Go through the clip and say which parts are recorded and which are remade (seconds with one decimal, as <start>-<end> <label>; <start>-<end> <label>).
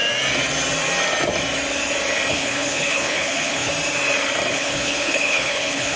0.0-2.3 recorded; 2.3-3.7 remade; 3.7-4.5 recorded; 4.5-6.0 remade